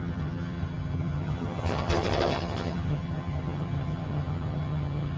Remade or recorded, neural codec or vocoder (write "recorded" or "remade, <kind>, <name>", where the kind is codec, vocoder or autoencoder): remade, vocoder, HiFi-GAN